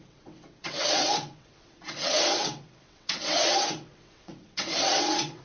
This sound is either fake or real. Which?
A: fake